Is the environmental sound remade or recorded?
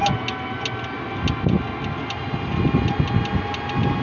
recorded